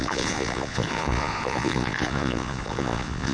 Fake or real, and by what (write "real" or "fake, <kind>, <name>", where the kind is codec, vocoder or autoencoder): fake, vocoder, Vocos